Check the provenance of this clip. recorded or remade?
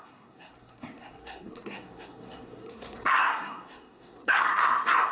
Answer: remade